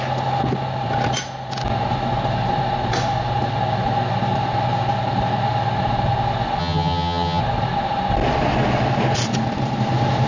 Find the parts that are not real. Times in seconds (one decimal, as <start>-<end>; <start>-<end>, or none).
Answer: 6.6-7.4